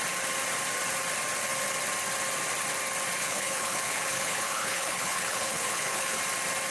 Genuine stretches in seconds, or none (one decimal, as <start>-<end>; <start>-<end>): 0.0-3.2; 6.2-6.7